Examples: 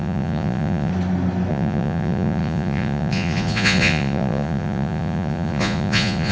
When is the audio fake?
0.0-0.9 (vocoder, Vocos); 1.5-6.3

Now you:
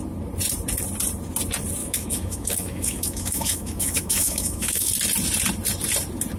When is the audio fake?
1.8-4.9 (autoencoder, DAC-VAE)

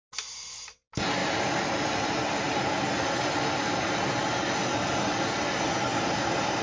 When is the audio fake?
5.9-6.6 (vocoder, BigVGAN v2)

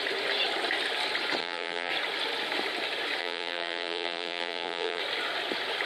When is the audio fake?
1.4-1.9 (vocoder, BigVGAN v2); 3.2-5.0